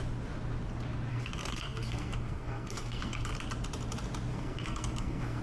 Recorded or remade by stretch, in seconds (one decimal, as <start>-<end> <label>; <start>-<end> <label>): 0.0-1.1 recorded; 1.1-3.3 remade; 3.3-4.3 recorded; 4.3-5.4 remade